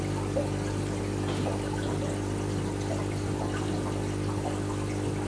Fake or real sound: real